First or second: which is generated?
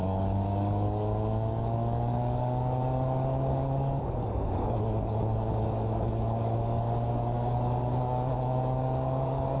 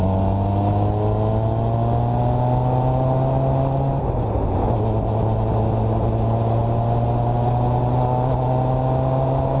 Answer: first